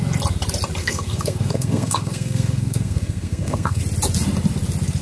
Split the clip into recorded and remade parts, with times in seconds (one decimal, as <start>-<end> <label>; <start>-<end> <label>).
0.0-0.8 recorded; 0.8-3.8 remade; 3.8-5.0 recorded

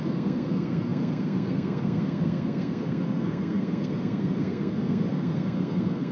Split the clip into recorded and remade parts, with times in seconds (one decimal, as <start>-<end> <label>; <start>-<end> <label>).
0.0-6.1 remade

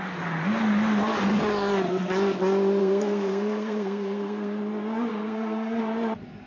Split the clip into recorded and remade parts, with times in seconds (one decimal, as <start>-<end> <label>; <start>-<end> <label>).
0.0-2.8 recorded; 2.8-4.6 remade; 4.6-5.1 recorded; 5.1-5.8 remade; 5.8-6.5 recorded

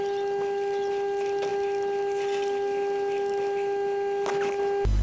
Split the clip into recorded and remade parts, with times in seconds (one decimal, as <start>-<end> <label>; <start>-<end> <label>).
0.0-5.0 recorded

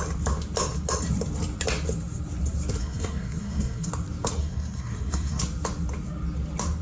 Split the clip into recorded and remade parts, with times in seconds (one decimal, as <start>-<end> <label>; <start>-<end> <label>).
0.0-2.8 recorded; 2.8-3.9 remade; 3.9-4.4 recorded; 4.4-5.4 remade; 5.4-6.8 recorded